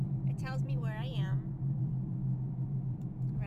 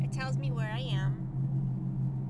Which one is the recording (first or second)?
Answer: second